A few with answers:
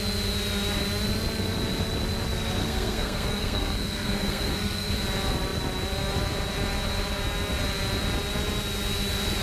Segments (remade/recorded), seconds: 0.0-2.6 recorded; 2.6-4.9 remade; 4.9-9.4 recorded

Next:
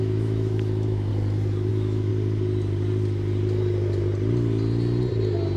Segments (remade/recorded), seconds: 0.0-1.1 remade; 1.1-1.7 recorded; 1.7-2.1 remade; 2.1-5.6 recorded

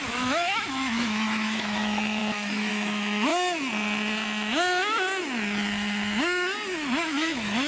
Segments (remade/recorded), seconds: 0.0-3.3 remade; 3.3-7.0 recorded; 7.0-7.7 remade

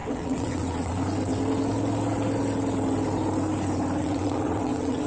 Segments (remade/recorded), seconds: 0.0-0.9 remade; 0.9-4.0 recorded; 4.0-5.1 remade

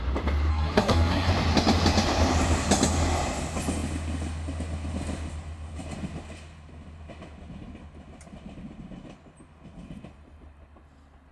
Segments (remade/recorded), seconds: 0.0-0.5 recorded; 0.5-1.3 remade; 1.3-11.3 recorded

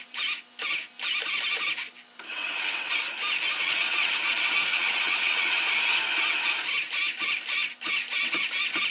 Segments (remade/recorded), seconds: 0.0-2.3 recorded; 2.3-2.9 remade; 2.9-3.6 recorded; 3.6-4.1 remade; 4.1-4.7 recorded; 4.7-5.6 remade; 5.6-8.9 recorded